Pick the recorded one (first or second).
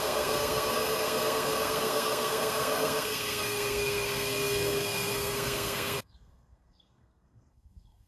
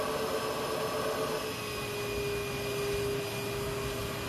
second